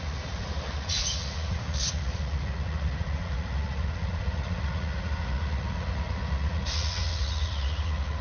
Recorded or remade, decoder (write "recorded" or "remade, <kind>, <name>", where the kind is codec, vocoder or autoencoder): remade, vocoder, Vocos